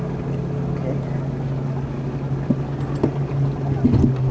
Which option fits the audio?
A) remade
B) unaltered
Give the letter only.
B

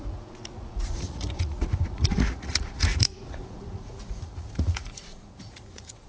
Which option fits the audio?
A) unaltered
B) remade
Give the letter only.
B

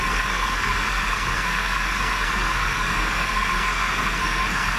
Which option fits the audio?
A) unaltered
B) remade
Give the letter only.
B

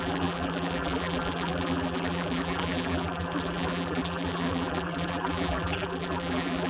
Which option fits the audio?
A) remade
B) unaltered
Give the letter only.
A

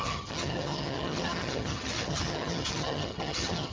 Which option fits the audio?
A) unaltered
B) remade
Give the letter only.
B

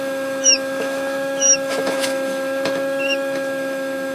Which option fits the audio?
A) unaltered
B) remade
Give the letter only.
B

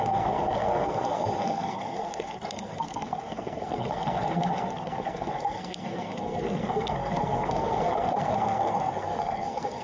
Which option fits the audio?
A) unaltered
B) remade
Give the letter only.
B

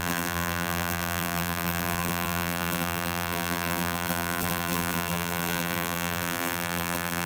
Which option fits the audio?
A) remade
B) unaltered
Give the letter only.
A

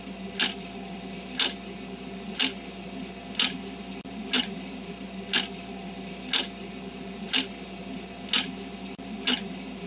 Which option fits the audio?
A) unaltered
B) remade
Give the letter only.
A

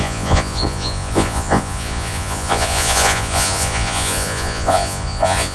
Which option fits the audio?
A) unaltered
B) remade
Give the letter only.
B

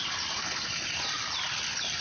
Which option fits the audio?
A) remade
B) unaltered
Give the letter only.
B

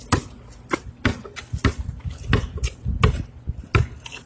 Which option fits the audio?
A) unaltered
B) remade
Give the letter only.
A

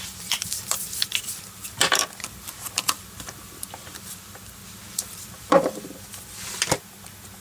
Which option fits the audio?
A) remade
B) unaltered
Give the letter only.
A